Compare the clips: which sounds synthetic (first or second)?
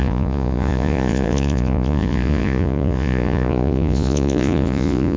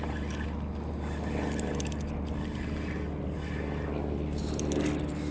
first